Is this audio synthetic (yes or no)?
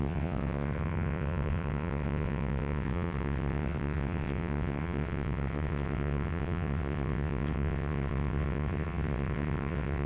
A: yes